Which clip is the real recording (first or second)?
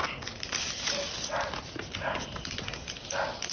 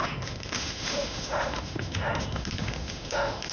first